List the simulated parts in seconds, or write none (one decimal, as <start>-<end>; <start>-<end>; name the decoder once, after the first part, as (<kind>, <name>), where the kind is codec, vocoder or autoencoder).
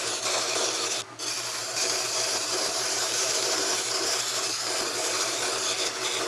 1.6-5.4 (vocoder, BigVGAN v2)